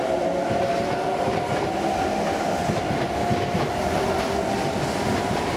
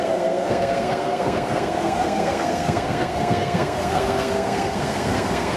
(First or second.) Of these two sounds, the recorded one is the first